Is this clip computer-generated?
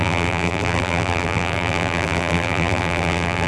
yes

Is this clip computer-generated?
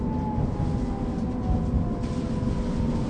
no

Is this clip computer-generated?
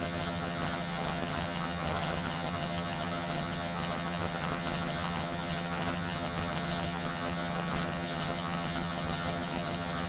yes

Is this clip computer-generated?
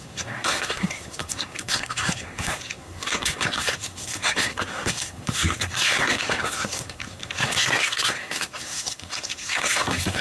yes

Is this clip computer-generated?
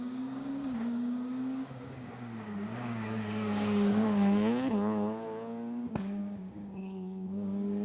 yes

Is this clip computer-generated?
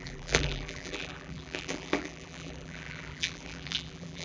yes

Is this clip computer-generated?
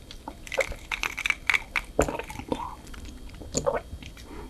no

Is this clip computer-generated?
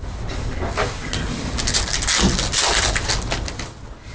no